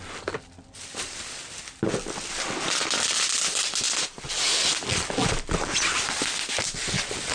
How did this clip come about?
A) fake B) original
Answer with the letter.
B